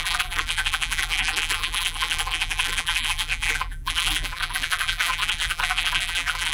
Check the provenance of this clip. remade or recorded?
remade